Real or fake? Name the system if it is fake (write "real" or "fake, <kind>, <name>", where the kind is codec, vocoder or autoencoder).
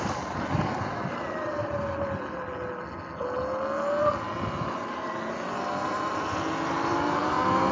real